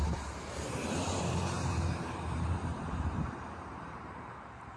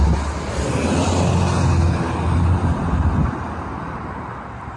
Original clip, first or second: second